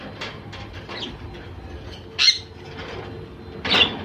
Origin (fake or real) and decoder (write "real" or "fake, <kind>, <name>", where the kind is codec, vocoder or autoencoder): real